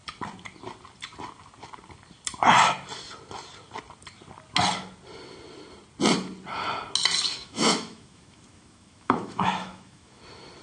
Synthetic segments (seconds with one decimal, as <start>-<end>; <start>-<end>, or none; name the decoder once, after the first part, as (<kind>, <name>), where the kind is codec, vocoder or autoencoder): 7.3-10.2 (autoencoder, DAC-VAE)